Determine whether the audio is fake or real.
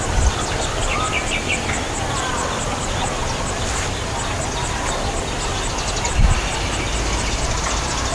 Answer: real